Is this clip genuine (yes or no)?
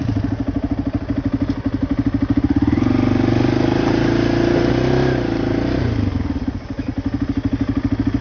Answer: yes